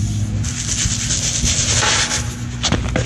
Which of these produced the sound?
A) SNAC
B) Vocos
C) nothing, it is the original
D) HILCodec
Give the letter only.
C